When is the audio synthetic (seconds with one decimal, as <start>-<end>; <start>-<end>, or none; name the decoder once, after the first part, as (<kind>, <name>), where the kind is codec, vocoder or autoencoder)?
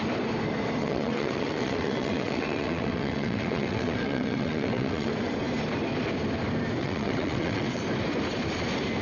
0.8-5.1 (vocoder, WaveNeXt); 6.8-7.8